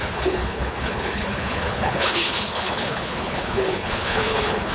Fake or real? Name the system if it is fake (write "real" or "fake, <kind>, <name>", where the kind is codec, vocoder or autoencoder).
fake, codec, HILCodec